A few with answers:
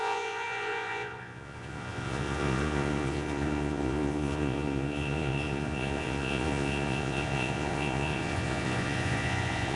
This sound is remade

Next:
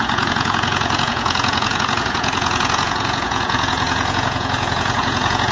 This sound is remade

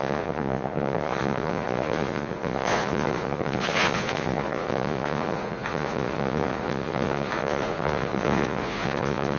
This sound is remade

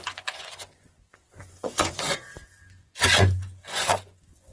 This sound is remade